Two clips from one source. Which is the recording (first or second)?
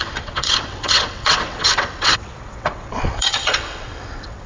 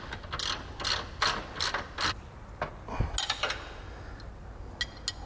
second